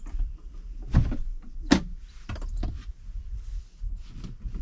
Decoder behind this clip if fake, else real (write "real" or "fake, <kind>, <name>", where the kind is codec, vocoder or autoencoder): real